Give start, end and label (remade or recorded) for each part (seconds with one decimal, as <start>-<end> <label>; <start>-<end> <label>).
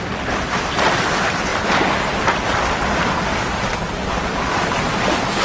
0.0-1.5 recorded; 1.5-2.0 remade; 2.0-3.3 recorded; 3.3-4.4 remade; 4.4-5.4 recorded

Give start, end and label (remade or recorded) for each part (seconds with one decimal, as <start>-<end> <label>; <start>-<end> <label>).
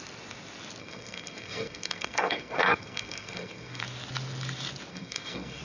0.0-0.8 recorded; 0.8-3.8 remade; 3.8-4.9 recorded; 4.9-5.6 remade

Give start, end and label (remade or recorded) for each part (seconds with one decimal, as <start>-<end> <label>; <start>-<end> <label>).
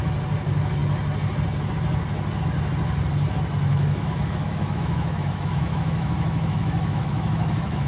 0.0-3.7 recorded; 3.7-7.9 remade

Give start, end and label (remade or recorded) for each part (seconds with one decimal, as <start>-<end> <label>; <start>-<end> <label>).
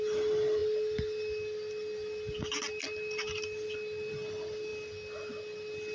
0.0-5.9 recorded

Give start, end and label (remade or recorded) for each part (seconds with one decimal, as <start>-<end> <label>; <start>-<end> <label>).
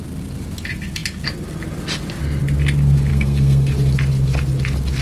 0.0-3.1 recorded; 3.1-3.7 remade; 3.7-5.0 recorded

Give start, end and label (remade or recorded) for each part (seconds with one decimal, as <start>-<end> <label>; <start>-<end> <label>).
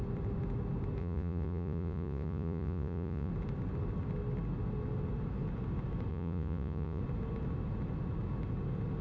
0.0-1.0 recorded; 1.0-3.3 remade; 3.3-6.1 recorded; 6.1-7.0 remade; 7.0-9.0 recorded